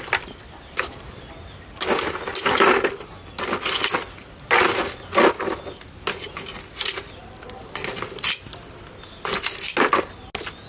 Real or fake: real